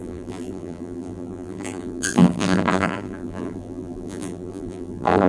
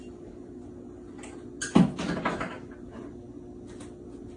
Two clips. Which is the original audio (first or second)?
second